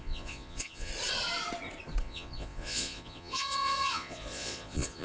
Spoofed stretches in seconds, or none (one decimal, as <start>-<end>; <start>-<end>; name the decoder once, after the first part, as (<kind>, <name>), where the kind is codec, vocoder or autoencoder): 0.0-0.9 (vocoder, Vocos); 2.0-5.0